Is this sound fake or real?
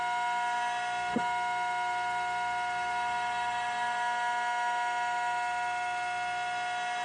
fake